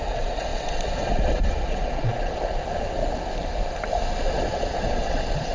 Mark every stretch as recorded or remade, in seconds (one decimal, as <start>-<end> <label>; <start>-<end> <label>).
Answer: 0.0-3.0 remade; 3.0-4.3 recorded; 4.3-5.5 remade